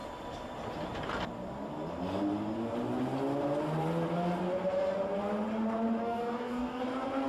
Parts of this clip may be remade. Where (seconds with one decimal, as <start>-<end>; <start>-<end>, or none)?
6.0-6.8